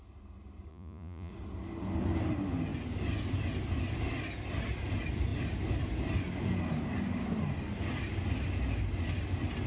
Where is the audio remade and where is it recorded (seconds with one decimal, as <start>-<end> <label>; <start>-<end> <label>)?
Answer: 0.0-0.7 recorded; 0.7-1.3 remade; 1.3-9.7 recorded